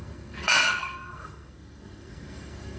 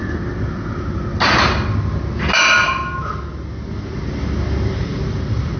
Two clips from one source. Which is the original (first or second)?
second